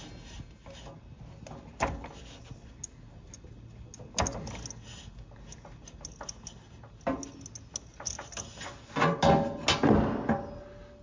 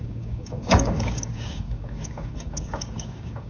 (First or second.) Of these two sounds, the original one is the first